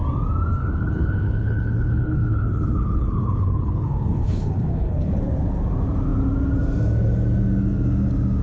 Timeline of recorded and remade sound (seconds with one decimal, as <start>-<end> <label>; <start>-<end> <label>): 0.0-0.6 recorded; 0.6-5.2 remade; 5.2-8.4 recorded